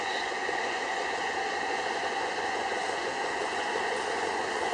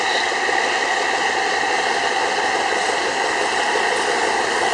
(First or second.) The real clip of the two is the second